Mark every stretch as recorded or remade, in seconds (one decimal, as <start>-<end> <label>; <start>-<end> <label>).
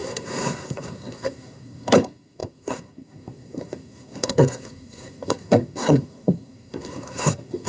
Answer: 0.0-7.7 remade